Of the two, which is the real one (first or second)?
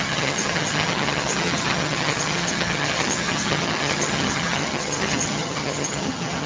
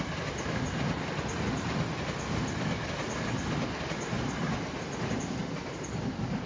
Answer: second